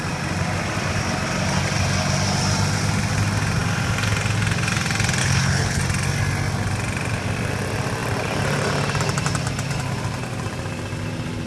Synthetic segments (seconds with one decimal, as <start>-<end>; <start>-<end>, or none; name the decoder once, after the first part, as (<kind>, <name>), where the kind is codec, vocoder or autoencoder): 5.2-5.8 (codec, HILCodec)